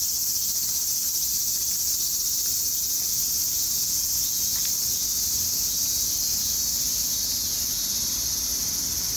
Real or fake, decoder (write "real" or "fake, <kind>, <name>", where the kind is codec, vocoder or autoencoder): real